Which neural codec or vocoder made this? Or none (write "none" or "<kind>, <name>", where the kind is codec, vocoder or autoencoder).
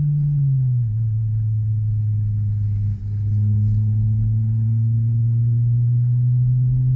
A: codec, HILCodec